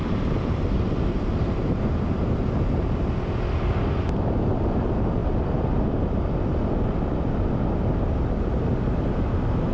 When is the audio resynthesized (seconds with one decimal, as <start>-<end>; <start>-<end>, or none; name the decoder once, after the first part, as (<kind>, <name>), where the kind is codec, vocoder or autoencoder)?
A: 0.0-2.5 (vocoder, BigVGAN v2)